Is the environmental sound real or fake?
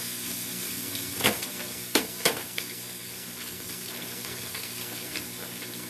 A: fake